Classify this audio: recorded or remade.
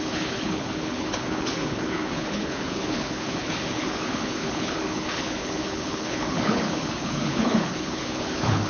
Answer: remade